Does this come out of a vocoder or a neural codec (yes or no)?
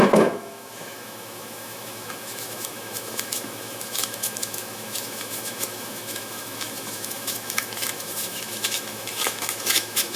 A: yes